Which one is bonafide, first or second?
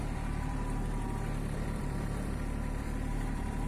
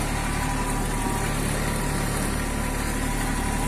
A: second